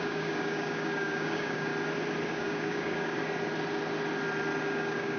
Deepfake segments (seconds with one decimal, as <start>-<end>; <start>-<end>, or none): 0.0-1.7; 2.3-3.2; 4.6-5.2